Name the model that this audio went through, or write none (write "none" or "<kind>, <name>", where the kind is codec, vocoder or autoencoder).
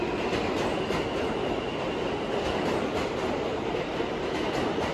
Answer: none